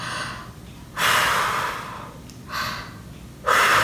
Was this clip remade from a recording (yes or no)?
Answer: no